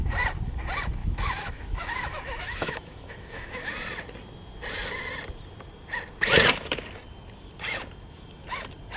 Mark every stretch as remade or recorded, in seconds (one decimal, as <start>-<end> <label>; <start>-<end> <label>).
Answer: 0.0-1.0 recorded; 1.0-3.7 remade; 3.7-9.0 recorded

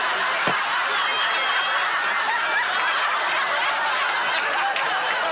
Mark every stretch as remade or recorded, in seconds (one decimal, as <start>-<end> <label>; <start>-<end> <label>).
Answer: 0.0-5.3 recorded

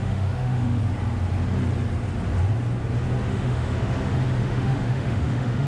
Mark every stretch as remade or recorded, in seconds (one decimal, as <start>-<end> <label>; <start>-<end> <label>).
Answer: 0.0-0.8 remade; 0.8-3.3 recorded; 3.3-4.0 remade; 4.0-4.4 recorded; 4.4-5.7 remade

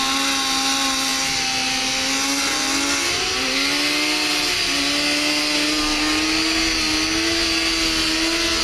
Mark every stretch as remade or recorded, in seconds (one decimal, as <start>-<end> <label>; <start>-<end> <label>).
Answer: 0.0-8.6 recorded

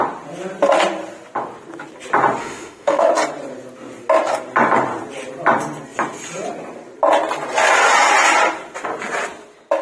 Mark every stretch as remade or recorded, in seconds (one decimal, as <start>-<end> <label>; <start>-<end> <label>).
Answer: 0.0-2.4 recorded; 2.4-3.1 remade; 3.1-9.8 recorded

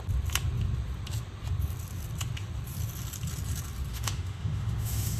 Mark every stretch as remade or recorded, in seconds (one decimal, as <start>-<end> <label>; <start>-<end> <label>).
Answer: 0.0-3.9 recorded; 3.9-5.2 remade

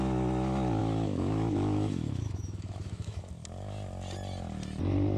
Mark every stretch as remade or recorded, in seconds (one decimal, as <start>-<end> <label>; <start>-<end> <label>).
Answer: 0.0-0.8 recorded; 0.8-3.3 remade; 3.3-5.2 recorded